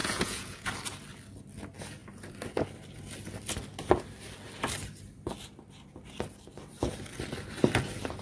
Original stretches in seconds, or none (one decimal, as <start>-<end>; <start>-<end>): 0.7-8.2